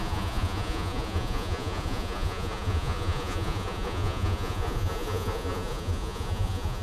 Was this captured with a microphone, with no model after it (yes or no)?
no